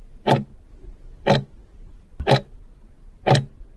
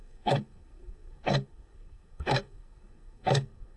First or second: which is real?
first